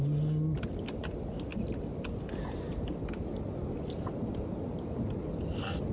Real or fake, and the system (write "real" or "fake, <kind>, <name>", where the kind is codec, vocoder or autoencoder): real